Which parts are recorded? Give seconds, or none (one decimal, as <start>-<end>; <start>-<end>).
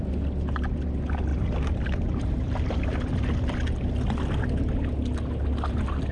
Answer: 0.0-1.3; 3.0-6.1